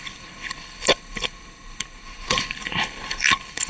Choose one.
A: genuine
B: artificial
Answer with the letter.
B